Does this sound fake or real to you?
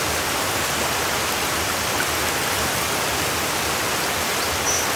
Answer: real